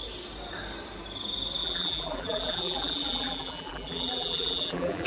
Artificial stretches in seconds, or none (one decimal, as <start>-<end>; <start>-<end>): 1.6-5.1